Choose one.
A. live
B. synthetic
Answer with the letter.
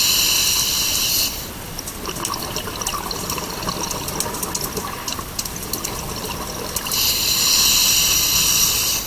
A